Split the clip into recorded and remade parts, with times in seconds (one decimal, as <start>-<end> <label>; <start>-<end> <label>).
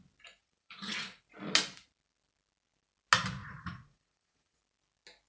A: 0.0-0.4 recorded; 0.4-1.2 remade; 1.2-3.4 recorded; 3.4-4.6 remade; 4.6-5.3 recorded